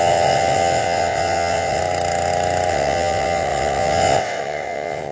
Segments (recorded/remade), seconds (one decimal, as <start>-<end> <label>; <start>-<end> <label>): 0.0-1.8 remade; 1.8-2.7 recorded; 2.7-5.1 remade

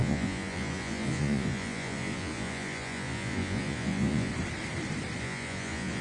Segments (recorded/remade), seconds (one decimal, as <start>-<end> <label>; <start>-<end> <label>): 0.0-4.3 remade; 4.3-5.2 recorded; 5.2-6.0 remade

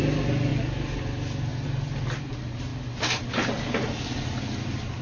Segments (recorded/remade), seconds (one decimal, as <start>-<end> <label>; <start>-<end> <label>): 0.0-5.0 recorded

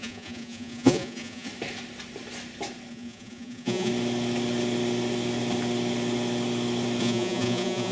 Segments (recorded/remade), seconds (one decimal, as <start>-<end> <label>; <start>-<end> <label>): 0.0-1.5 remade; 1.5-2.9 recorded; 2.9-3.9 remade; 3.9-7.0 recorded; 7.0-7.9 remade

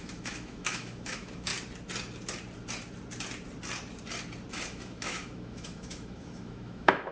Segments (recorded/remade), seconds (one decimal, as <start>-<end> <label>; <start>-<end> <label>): 0.0-1.5 remade; 1.5-4.5 recorded; 4.5-7.1 remade

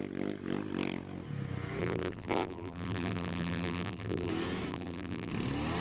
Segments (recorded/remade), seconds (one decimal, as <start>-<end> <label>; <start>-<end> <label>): 0.0-1.8 recorded; 1.8-4.3 remade; 4.3-4.7 recorded; 4.7-5.3 remade; 5.3-5.8 recorded

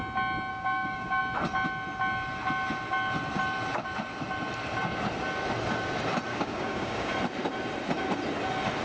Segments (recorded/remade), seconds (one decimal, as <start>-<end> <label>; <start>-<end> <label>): 0.0-0.5 recorded; 0.5-1.2 remade; 1.2-6.3 recorded; 6.3-7.1 remade; 7.1-8.8 recorded